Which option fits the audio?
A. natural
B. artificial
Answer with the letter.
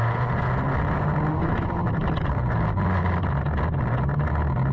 A